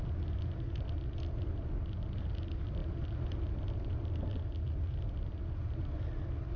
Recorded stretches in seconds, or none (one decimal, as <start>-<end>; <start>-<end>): 0.0-6.6